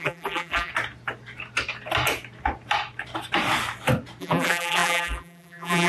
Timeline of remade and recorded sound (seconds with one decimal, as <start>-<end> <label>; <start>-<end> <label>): 0.0-0.7 remade; 0.7-4.2 recorded; 4.2-5.9 remade